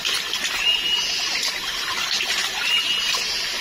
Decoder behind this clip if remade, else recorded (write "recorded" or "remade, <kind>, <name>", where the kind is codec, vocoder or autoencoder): recorded